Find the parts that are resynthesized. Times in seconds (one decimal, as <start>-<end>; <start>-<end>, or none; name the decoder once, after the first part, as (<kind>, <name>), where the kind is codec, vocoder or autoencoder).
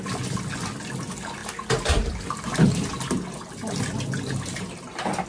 none